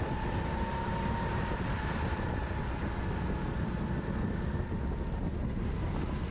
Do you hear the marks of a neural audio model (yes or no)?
no